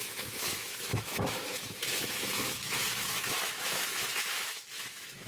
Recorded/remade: remade